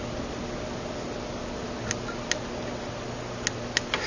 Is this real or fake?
real